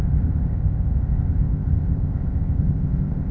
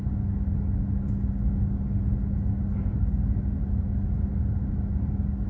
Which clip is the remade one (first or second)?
first